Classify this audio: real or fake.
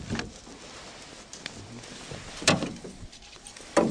real